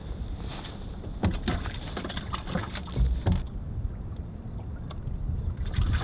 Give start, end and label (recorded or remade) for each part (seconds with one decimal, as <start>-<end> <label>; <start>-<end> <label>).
0.0-3.6 recorded; 3.6-6.0 remade